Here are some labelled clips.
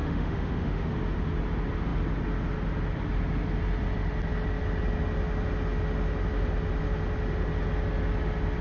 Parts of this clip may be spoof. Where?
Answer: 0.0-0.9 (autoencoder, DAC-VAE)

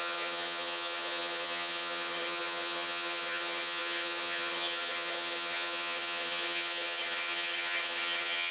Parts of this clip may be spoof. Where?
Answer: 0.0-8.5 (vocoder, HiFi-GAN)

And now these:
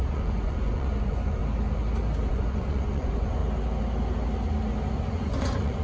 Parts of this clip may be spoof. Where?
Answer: 0.0-1.4 (vocoder, Vocos); 2.3-3.4; 5.1-5.8

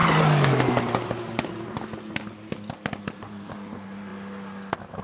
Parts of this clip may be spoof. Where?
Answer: 3.0-4.1 (vocoder, BigVGAN v2)

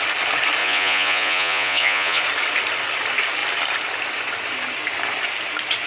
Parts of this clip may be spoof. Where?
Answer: 0.6-2.2 (vocoder, Vocos)

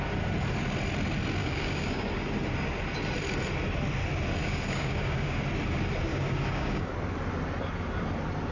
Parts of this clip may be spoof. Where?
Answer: 1.4-2.1 (codec, DAC); 4.4-5.4; 6.1-6.9